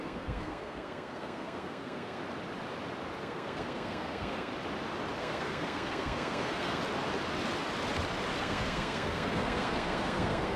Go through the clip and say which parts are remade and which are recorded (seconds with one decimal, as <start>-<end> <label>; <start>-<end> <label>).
0.0-2.2 remade; 2.2-3.2 recorded; 3.2-4.5 remade; 4.5-5.2 recorded; 5.2-6.8 remade; 6.8-8.4 recorded; 8.4-10.6 remade